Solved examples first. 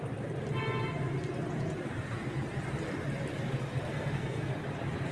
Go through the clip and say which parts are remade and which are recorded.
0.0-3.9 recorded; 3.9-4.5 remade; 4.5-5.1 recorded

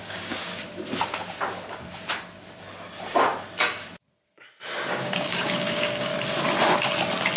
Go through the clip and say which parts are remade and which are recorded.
0.0-0.5 remade; 0.5-4.9 recorded; 4.9-6.1 remade; 6.1-7.4 recorded

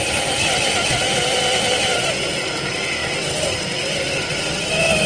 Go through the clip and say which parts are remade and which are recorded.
0.0-5.1 recorded